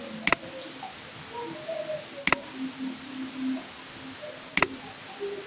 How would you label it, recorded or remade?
recorded